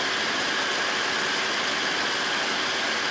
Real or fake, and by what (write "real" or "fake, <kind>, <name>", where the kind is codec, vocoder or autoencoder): real